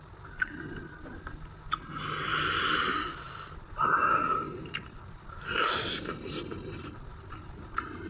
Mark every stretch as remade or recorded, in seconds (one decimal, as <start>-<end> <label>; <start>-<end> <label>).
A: 0.0-2.3 remade; 2.3-3.2 recorded; 3.2-8.1 remade

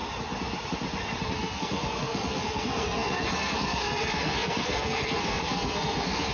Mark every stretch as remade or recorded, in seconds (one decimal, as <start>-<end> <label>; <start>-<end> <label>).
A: 0.0-1.2 recorded; 1.2-6.3 remade

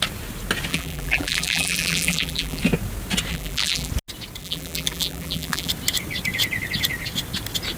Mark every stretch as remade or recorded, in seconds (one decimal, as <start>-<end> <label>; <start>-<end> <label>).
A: 0.0-0.7 recorded; 0.7-2.6 remade; 2.6-3.3 recorded; 3.3-3.9 remade; 3.9-4.4 recorded; 4.4-5.7 remade; 5.7-7.8 recorded